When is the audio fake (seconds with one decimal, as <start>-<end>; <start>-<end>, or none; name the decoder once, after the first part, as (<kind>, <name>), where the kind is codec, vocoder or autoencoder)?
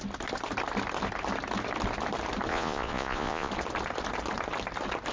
2.5-3.5 (vocoder, Vocos)